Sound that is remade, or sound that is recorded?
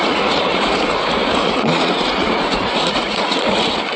remade